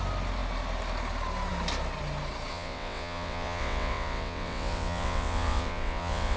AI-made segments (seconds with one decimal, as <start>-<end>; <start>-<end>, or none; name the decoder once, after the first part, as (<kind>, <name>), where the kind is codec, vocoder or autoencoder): 2.5-6.4 (vocoder, WaveNeXt)